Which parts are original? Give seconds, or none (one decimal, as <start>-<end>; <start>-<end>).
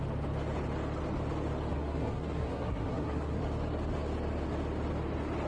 0.0-1.7; 3.4-5.5